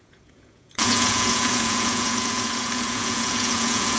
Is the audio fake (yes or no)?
yes